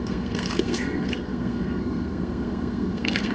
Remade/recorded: remade